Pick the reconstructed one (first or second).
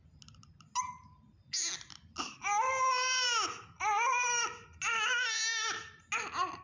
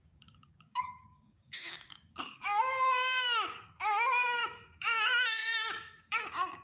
second